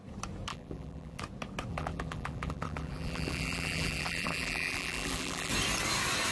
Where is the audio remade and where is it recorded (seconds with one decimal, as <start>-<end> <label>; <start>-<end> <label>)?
0.0-0.5 recorded; 0.5-1.2 remade; 1.2-1.7 recorded; 1.7-5.5 remade; 5.5-6.3 recorded